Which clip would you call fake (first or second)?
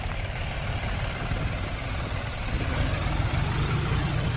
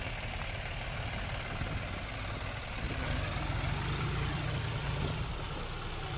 first